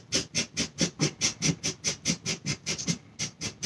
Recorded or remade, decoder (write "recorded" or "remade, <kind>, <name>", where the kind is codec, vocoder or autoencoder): recorded